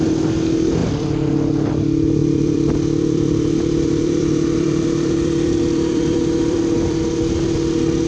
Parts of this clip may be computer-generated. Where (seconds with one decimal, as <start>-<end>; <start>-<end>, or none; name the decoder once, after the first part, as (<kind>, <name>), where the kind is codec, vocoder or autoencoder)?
2.2-7.0 (vocoder, BigVGAN v2)